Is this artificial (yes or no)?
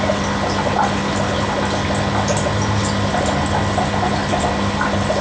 no